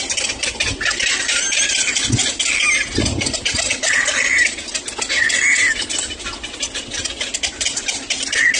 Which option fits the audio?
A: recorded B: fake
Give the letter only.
A